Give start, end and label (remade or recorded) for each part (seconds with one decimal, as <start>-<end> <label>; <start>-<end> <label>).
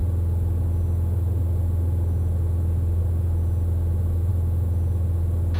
0.0-5.6 recorded